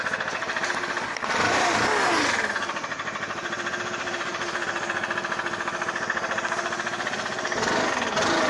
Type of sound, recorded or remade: recorded